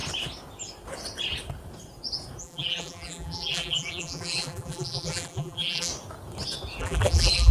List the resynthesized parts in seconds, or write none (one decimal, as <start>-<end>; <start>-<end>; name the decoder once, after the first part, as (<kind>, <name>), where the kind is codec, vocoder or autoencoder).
2.4-5.9 (vocoder, BigVGAN v2); 6.8-7.5